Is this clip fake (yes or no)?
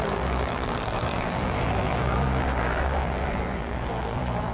yes